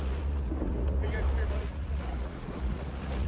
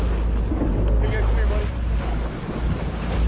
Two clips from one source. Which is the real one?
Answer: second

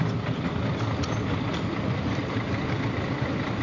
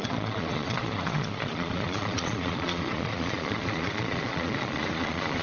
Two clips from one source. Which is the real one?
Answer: first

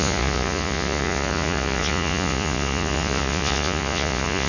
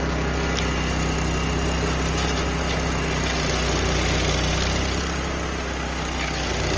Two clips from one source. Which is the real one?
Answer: second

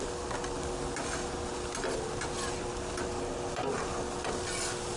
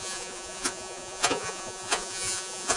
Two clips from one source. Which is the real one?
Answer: first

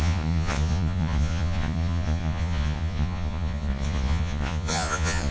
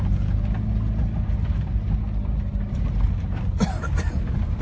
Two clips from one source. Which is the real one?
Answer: second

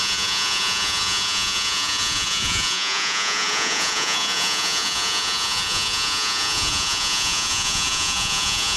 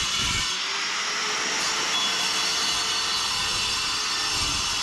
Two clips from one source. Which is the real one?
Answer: second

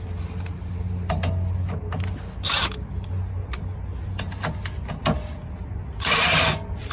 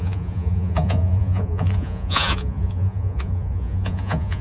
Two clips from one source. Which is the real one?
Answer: first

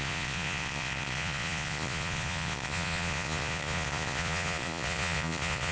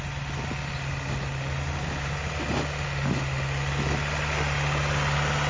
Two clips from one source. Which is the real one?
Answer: second